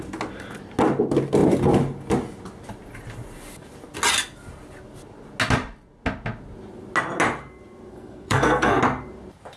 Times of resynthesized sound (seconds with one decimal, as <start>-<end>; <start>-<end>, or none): 7.9-8.8